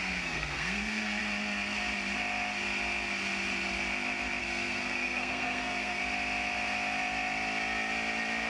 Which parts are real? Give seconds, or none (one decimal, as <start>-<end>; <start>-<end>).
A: 1.2-4.4; 6.0-8.5